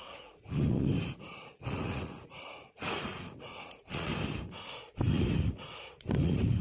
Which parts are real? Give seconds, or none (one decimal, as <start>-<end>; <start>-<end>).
0.9-1.5; 4.1-5.1

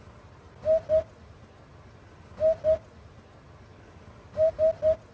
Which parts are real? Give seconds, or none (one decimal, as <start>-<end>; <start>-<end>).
0.0-3.7; 4.5-5.1

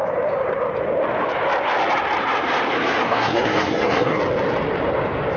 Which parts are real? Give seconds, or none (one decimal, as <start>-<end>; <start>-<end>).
0.0-3.0; 4.2-5.4

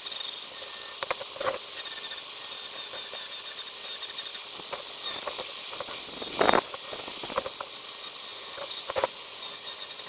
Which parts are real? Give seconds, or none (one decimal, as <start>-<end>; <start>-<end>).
0.0-8.3

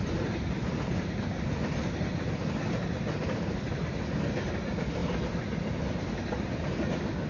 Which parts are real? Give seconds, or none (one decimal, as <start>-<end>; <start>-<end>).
0.0-7.3

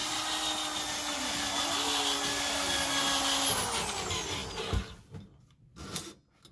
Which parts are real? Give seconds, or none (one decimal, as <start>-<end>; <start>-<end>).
0.0-6.5

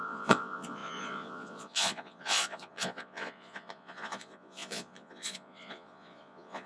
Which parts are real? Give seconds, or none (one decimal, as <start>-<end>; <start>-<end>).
none

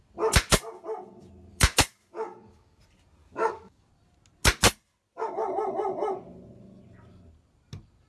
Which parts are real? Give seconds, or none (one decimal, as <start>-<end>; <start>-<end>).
0.0-1.5; 2.8-3.2; 3.9-8.1